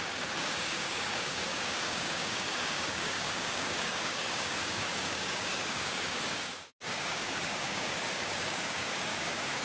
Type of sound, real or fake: fake